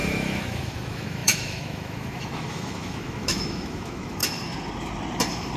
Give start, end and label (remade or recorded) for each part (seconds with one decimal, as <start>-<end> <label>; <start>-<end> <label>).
0.0-4.2 remade; 4.2-5.6 recorded

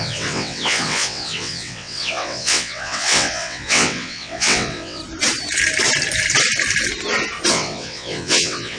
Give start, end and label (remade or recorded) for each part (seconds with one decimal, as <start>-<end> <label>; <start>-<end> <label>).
0.0-5.0 remade; 5.0-7.5 recorded; 7.5-8.8 remade

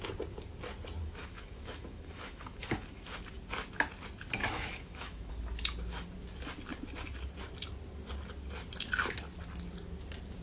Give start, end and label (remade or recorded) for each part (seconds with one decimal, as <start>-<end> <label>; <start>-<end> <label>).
0.0-1.0 recorded; 1.0-3.2 remade; 3.2-4.4 recorded; 4.4-5.3 remade; 5.3-10.4 recorded

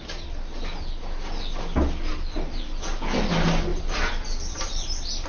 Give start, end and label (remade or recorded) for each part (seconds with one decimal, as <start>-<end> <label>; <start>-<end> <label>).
0.0-5.3 recorded